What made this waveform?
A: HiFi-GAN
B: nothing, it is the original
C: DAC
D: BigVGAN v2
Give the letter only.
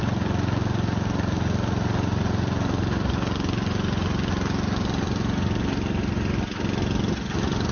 B